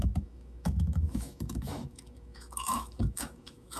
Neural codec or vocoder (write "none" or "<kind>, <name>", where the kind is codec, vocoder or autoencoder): autoencoder, DAC-VAE